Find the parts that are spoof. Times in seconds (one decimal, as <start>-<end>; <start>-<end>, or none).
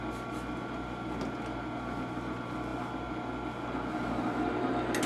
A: none